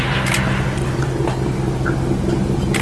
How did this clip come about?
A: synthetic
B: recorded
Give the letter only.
B